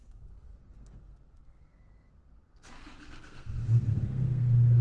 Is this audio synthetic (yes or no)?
yes